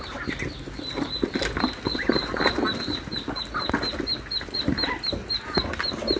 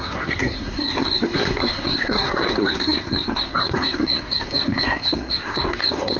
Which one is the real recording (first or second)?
first